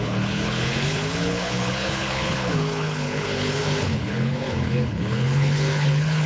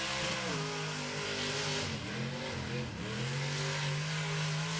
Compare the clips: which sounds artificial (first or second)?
first